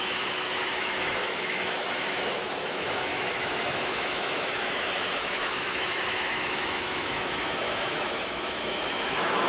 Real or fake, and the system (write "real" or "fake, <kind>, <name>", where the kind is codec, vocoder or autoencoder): fake, autoencoder, DAC-VAE